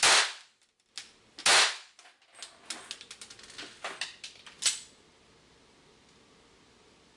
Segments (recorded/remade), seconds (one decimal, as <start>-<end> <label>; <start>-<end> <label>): 0.0-7.2 recorded